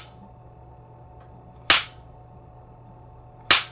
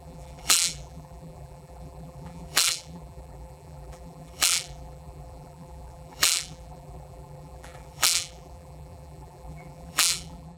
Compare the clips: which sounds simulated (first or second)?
second